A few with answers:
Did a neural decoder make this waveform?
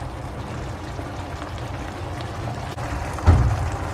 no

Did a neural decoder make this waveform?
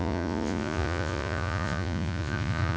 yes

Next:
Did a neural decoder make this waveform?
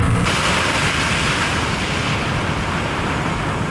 no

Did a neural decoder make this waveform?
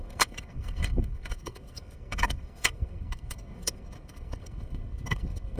yes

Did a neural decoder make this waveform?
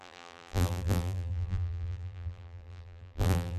yes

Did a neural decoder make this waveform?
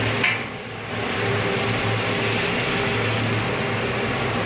no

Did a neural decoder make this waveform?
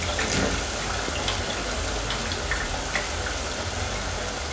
no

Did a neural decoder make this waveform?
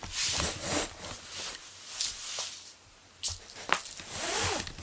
no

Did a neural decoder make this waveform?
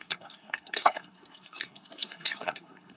yes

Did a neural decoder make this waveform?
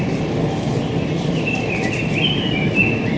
no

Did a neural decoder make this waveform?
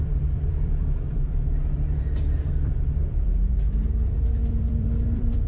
yes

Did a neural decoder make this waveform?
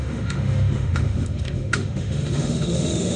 yes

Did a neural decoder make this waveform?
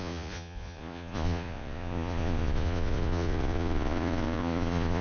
yes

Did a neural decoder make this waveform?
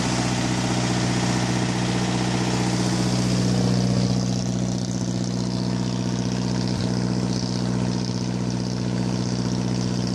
no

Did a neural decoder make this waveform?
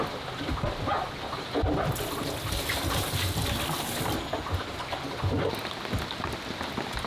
no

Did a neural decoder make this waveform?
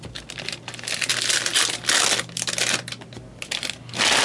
no